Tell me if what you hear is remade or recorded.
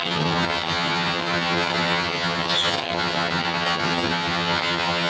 remade